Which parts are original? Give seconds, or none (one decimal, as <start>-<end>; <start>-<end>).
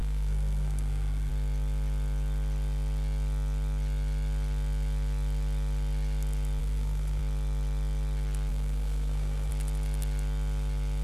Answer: 1.3-6.6; 7.2-8.5; 9.5-11.0